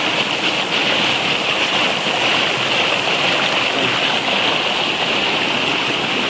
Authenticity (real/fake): real